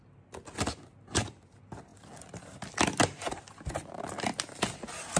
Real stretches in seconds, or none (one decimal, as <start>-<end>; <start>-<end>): 0.0-5.2

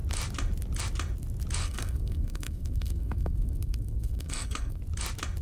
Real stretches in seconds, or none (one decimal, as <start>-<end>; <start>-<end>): 0.0-1.6; 4.8-5.4